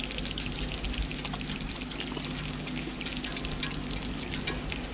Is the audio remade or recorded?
recorded